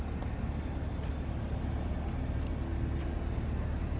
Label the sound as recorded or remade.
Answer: recorded